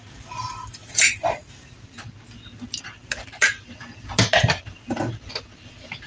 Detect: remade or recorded recorded